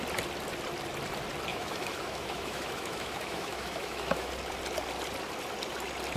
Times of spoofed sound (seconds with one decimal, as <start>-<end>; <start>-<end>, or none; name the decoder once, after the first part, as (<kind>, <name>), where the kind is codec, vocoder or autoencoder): 1.5-4.3 (autoencoder, DAC-VAE)